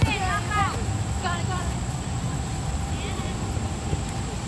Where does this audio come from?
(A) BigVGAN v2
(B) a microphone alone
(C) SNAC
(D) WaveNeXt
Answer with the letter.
A